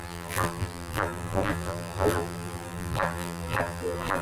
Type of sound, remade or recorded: remade